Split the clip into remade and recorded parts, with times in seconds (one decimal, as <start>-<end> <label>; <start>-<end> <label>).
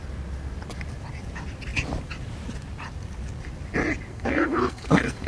0.0-4.1 recorded; 4.1-5.3 remade